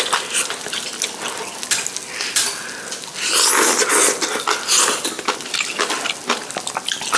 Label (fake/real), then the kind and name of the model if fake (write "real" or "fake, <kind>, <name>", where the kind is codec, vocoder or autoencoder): real